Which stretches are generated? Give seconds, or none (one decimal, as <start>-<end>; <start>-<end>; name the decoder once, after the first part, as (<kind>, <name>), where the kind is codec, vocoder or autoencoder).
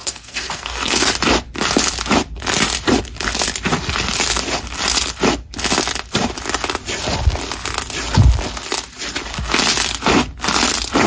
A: 0.0-1.1 (codec, SNAC)